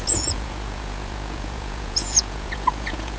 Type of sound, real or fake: fake